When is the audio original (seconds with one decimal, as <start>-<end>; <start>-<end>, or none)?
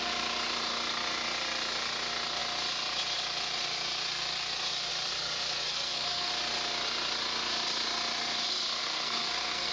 0.0-5.7; 6.3-8.7